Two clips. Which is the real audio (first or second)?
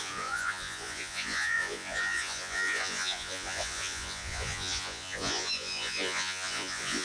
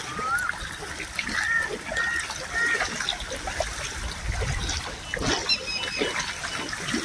second